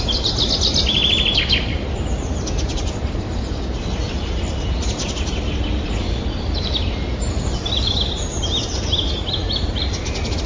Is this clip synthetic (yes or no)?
no